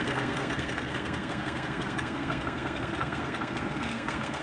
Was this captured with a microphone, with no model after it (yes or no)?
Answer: no